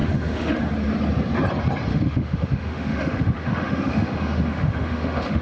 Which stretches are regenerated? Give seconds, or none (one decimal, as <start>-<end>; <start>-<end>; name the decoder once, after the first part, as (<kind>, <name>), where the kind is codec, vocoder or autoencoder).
0.0-0.6 (autoencoder, DAC-VAE); 1.9-5.4